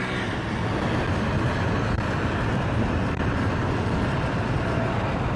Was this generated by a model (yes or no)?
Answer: no